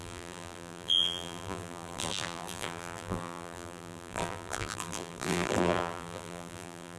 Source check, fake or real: fake